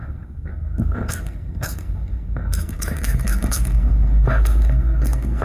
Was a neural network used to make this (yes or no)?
yes